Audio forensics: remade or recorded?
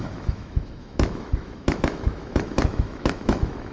remade